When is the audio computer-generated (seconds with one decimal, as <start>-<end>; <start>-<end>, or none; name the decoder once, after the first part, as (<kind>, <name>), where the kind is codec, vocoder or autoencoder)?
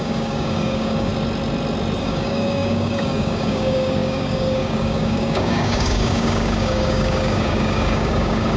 0.0-1.1 (codec, DAC); 2.0-8.6